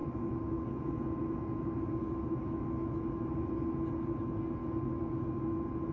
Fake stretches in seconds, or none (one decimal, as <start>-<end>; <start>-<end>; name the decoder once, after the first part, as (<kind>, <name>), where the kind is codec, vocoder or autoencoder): 0.0-3.5 (autoencoder, DAC-VAE); 4.6-5.4